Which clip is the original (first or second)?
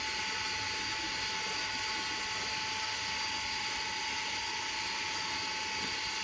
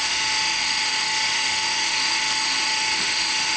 first